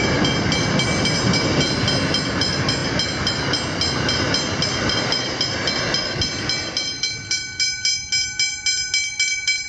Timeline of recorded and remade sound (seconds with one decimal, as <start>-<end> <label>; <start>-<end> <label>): 0.0-9.7 recorded